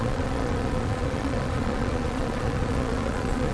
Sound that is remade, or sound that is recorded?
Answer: remade